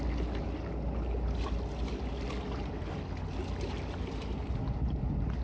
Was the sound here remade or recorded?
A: recorded